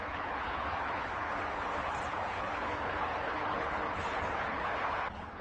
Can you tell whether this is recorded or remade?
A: remade